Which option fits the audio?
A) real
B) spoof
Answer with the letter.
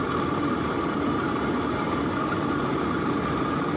A